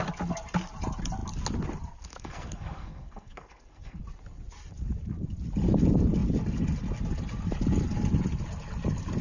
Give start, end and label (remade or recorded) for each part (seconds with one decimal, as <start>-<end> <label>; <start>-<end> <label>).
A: 0.0-2.1 recorded; 2.1-4.0 remade; 4.0-9.2 recorded